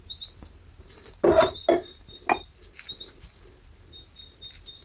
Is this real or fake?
real